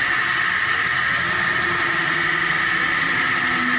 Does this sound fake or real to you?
real